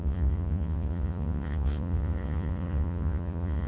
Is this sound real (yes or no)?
no